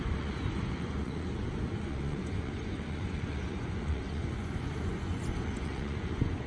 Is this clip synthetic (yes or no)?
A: yes